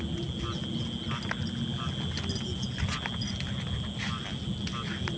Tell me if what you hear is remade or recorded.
recorded